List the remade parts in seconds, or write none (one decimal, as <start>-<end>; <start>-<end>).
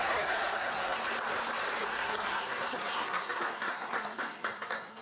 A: 0.0-1.0; 1.8-5.0